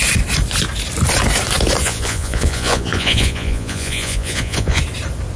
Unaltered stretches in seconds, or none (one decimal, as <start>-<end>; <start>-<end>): 0.0-1.8; 4.8-5.4